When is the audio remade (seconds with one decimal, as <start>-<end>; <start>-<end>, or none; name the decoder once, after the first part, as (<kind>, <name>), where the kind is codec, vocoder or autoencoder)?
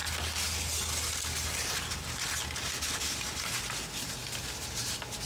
none